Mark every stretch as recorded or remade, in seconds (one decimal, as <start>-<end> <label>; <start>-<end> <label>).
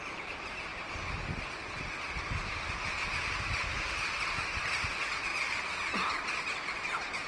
0.0-7.3 recorded